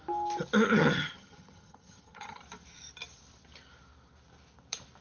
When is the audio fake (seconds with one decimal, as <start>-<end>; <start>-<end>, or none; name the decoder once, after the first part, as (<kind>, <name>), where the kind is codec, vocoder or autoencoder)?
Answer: 0.7-2.4 (vocoder, HiFi-GAN)